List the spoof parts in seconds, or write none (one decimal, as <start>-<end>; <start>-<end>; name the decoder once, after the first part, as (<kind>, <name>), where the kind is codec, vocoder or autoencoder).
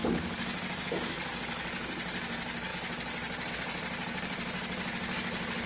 none